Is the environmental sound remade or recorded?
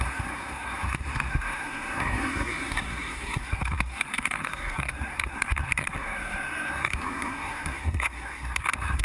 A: remade